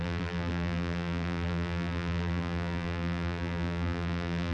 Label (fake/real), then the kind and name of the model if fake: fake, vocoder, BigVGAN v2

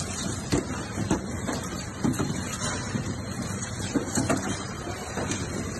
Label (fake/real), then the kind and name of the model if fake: fake, vocoder, BigVGAN v2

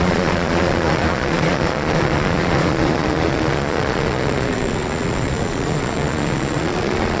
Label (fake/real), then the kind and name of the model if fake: fake, vocoder, Vocos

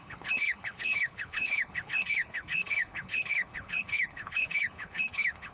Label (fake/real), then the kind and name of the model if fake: fake, codec, HILCodec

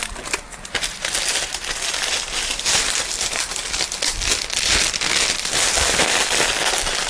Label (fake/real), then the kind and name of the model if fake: real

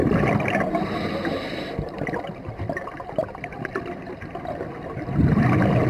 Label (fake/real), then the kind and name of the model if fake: real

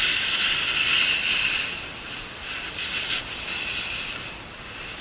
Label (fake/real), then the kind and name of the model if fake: real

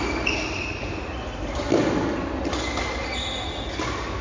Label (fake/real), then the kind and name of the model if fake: real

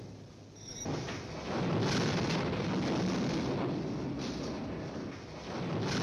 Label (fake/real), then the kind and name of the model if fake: real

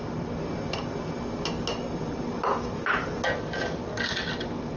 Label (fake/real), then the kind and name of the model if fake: real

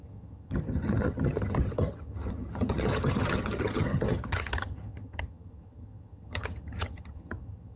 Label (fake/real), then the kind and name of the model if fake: fake, vocoder, HiFi-GAN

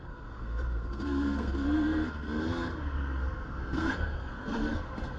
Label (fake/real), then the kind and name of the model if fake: fake, codec, SNAC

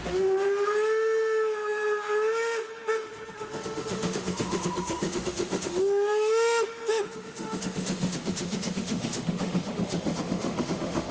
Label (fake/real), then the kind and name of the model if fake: fake, autoencoder, DAC-VAE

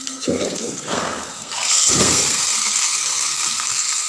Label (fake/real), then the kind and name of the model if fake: fake, codec, SNAC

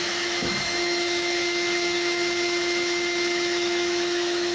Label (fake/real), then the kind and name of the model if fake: fake, autoencoder, DAC-VAE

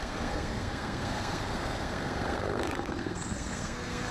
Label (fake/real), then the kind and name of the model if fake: fake, codec, SNAC